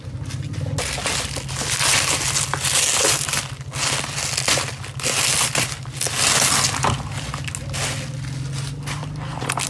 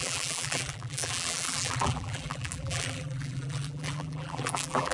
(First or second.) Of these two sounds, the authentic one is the first